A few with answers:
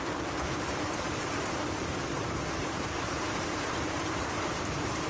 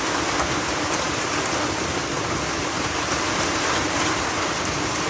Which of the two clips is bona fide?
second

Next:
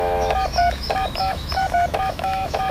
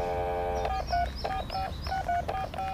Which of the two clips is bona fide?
second